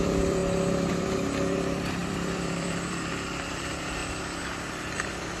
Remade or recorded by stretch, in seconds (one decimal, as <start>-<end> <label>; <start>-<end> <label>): 0.0-0.4 remade; 0.4-0.9 recorded; 0.9-4.0 remade; 4.0-4.7 recorded; 4.7-5.4 remade